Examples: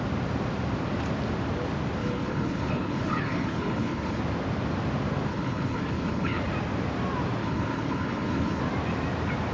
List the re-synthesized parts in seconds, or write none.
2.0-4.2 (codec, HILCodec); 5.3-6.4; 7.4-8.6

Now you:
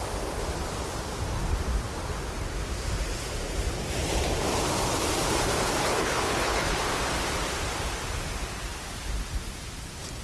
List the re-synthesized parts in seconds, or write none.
5.8-6.8 (codec, HILCodec)

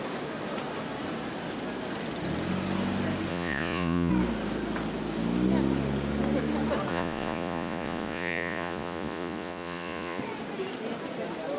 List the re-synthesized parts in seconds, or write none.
3.3-4.1 (vocoder, Vocos); 6.9-10.2

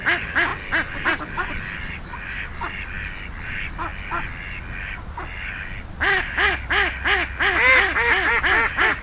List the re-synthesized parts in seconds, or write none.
none

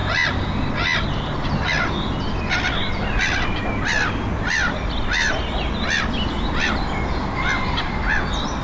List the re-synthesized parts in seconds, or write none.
none

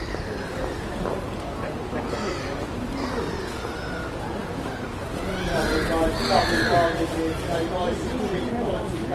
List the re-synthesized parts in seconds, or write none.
none